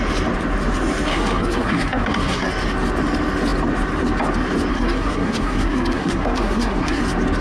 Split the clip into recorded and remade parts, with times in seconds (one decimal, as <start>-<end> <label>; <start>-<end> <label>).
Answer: 0.0-1.1 recorded; 1.1-2.5 remade; 2.5-4.7 recorded; 4.7-7.0 remade; 7.0-7.4 recorded

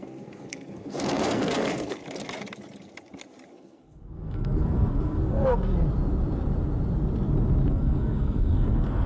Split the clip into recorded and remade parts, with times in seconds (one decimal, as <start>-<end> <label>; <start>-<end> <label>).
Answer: 0.0-2.0 remade; 2.0-3.5 recorded; 3.5-5.7 remade; 5.7-7.7 recorded; 7.7-9.1 remade

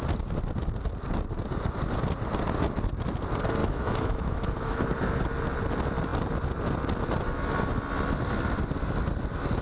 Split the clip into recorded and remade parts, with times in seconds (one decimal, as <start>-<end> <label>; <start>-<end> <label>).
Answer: 0.0-3.6 recorded; 3.6-4.8 remade; 4.8-9.6 recorded

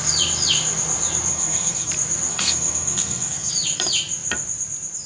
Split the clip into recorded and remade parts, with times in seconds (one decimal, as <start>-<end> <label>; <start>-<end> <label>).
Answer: 0.0-1.3 recorded; 1.3-1.9 remade; 1.9-2.3 recorded; 2.3-3.5 remade; 3.5-5.1 recorded

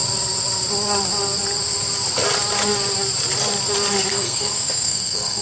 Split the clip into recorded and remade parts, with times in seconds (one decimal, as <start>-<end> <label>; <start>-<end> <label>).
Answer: 0.0-4.1 recorded; 4.1-5.4 remade